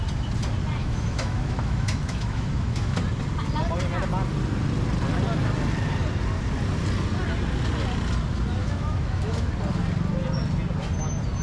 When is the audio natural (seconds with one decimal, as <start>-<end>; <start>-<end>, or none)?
0.0-0.8; 3.0-8.6; 9.5-11.4